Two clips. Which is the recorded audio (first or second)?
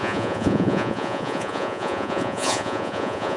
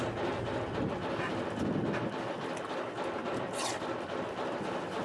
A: second